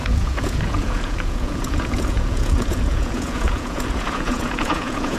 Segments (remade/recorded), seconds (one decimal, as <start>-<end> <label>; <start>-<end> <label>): 0.0-5.2 remade